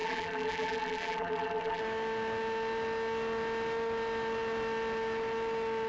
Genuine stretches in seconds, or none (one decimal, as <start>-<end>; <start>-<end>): 1.8-5.9